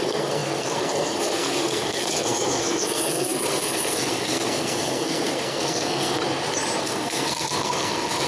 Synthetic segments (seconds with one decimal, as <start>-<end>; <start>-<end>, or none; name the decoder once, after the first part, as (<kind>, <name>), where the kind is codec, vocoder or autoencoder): 0.0-6.2 (codec, SNAC); 6.8-8.3

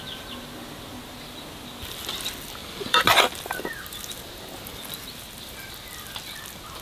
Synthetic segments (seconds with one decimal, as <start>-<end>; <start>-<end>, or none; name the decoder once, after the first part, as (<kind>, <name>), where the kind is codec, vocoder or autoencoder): 2.6-3.2 (vocoder, BigVGAN v2)

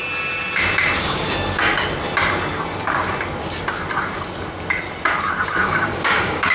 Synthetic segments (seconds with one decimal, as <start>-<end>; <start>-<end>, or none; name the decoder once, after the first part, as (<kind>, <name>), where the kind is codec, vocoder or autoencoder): 1.0-1.7 (codec, DAC); 5.6-6.5